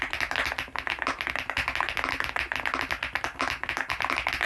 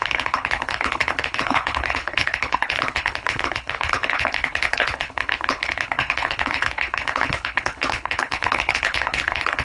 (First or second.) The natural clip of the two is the first